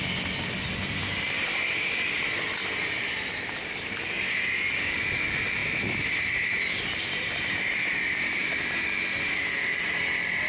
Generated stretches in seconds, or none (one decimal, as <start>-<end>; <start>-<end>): 1.0-4.7; 5.6-8.6